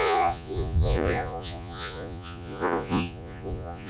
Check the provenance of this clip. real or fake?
fake